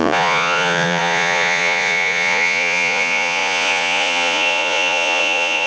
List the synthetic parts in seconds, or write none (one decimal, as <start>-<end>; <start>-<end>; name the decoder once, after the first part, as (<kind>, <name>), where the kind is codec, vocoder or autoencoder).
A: 0.0-5.7 (vocoder, Vocos)